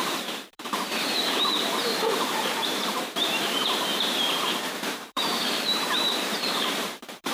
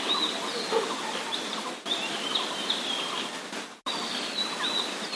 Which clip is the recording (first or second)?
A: second